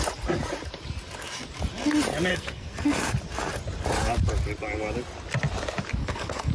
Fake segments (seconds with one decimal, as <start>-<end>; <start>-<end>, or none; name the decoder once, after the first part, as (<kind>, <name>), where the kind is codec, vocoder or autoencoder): 2.3-3.1 (codec, SNAC); 6.0-6.5